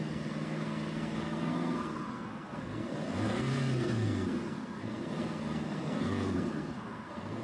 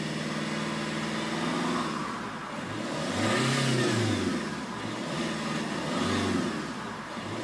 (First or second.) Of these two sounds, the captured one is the second